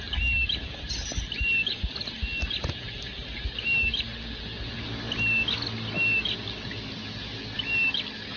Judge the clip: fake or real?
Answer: real